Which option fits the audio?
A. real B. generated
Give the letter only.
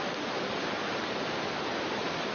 A